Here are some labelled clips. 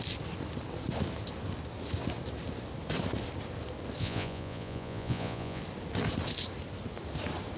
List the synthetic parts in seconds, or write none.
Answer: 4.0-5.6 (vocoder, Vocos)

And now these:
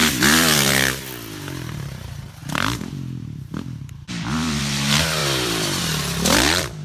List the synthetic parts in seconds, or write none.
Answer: 2.4-4.6 (vocoder, BigVGAN v2); 5.2-5.8

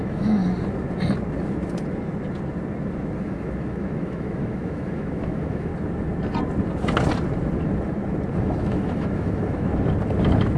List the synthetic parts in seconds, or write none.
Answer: 0.0-0.4 (autoencoder, DAC-VAE); 3.2-5.7; 8.4-9.7